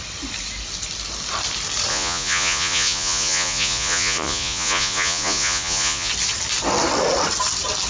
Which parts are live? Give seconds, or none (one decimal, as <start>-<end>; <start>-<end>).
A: 0.0-1.9; 6.1-7.9